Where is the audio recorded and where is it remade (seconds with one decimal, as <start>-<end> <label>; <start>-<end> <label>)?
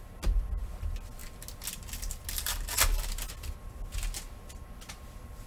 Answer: 0.0-5.5 recorded